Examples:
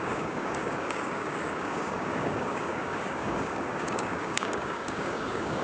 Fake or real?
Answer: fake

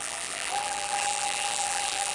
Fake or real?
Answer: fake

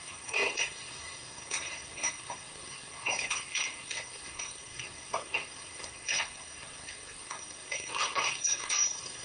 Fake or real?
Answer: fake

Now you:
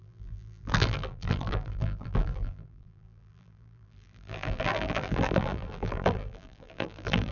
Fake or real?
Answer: fake